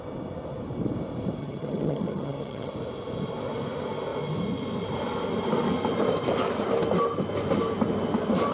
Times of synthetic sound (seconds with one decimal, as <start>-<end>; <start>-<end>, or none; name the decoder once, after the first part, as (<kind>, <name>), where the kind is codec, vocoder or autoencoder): 1.4-2.7 (vocoder, HiFi-GAN)